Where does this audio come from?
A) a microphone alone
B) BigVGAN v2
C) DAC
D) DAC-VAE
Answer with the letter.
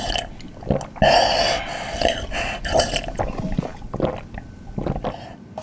A